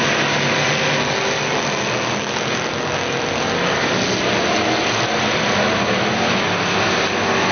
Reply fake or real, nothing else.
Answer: real